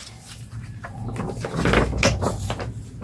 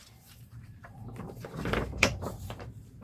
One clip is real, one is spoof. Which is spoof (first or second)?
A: second